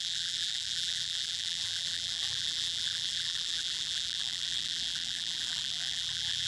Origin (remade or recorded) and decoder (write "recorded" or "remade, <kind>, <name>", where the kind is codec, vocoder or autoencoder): remade, vocoder, BigVGAN v2